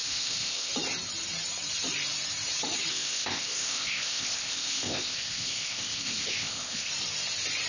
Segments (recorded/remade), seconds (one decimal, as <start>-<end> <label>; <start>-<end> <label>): 0.0-0.7 remade; 0.7-2.9 recorded; 2.9-6.9 remade; 6.9-7.7 recorded